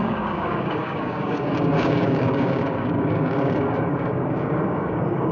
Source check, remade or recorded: remade